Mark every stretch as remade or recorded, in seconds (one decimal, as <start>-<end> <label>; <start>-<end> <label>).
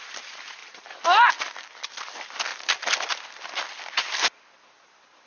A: 0.0-5.3 recorded